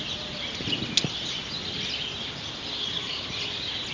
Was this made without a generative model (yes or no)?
yes